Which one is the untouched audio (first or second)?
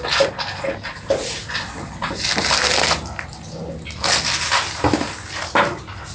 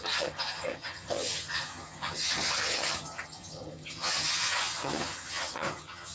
first